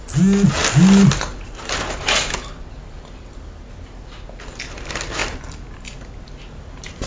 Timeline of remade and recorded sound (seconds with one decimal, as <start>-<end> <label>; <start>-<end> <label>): 0.0-7.1 recorded